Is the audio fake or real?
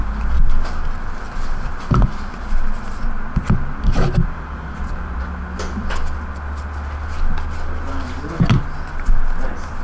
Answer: real